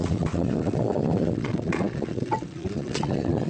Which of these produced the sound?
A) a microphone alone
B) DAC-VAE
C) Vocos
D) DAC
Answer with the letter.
C